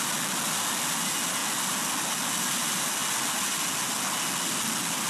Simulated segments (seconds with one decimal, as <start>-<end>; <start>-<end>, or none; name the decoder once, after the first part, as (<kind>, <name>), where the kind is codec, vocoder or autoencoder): none